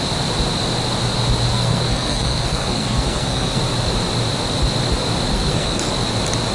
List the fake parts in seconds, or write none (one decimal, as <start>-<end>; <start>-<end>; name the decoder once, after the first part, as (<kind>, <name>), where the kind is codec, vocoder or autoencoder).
1.5-3.6 (codec, SNAC); 5.3-5.9